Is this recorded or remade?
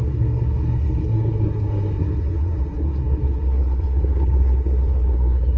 remade